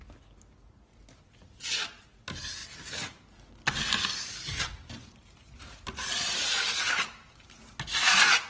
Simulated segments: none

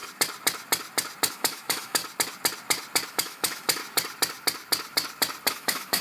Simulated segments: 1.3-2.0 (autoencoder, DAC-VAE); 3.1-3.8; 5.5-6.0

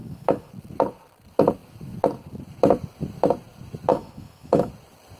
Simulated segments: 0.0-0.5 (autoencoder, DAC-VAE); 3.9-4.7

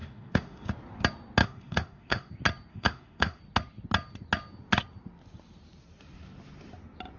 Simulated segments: 0.0-0.7 (autoencoder, DAC-VAE); 1.4-2.3; 2.7-3.4

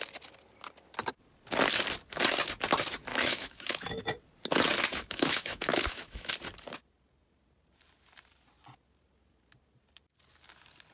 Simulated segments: 3.1-4.0 (autoencoder, DAC-VAE); 4.9-6.3

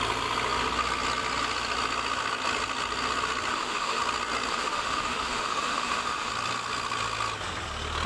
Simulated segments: 3.5-4.0 (autoencoder, DAC-VAE); 4.5-6.3